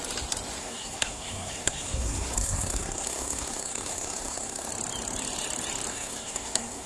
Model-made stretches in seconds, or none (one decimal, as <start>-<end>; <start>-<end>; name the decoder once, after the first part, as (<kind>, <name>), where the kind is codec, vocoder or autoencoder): 0.6-4.7 (codec, SNAC); 5.9-6.9